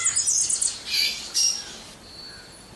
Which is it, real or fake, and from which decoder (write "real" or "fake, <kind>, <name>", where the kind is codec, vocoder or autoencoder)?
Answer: real